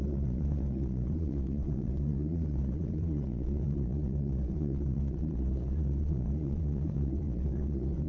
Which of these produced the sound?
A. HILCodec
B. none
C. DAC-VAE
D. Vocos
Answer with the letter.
D